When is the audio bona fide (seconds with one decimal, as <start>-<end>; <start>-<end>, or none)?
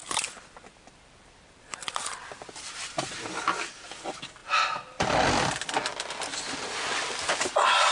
2.8-4.4; 6.4-7.9